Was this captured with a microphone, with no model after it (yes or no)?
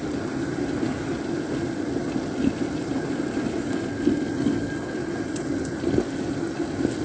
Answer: yes